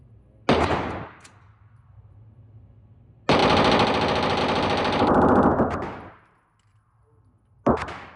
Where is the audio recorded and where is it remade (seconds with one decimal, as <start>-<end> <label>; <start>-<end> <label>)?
0.0-8.2 recorded